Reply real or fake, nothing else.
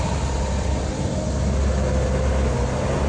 real